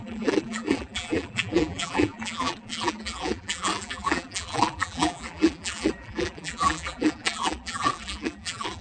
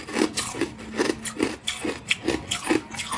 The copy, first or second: first